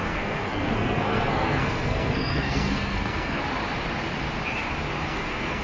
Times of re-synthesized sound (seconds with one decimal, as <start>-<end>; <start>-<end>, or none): 0.0-3.4; 5.0-5.6